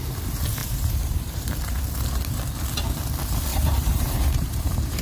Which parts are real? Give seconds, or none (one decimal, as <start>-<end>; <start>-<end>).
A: 0.0-0.6; 1.8-3.5